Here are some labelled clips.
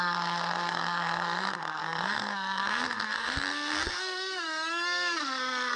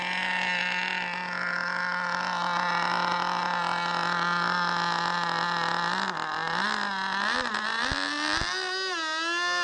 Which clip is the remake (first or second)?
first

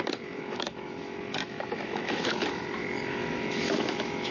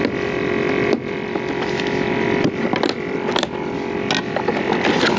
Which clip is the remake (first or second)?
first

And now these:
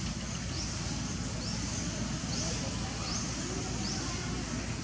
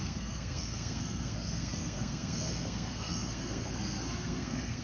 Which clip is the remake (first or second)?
second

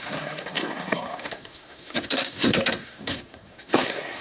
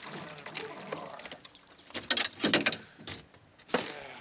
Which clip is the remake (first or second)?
first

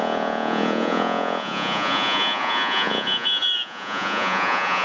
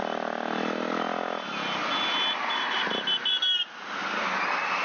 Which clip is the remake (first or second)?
first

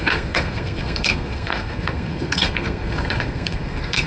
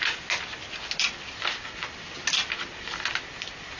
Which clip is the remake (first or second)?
first